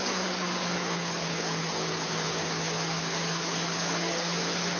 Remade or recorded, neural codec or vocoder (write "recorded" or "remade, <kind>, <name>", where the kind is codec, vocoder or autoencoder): remade, codec, HILCodec